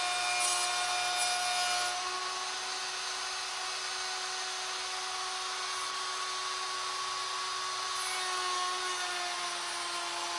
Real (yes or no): yes